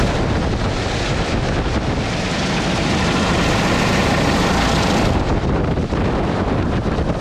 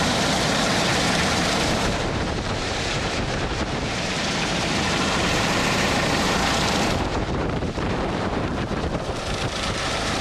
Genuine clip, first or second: first